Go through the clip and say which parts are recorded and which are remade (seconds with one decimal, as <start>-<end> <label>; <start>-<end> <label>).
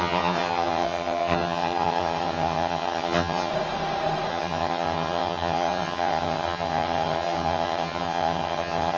0.0-3.5 remade; 3.5-4.3 recorded; 4.3-9.0 remade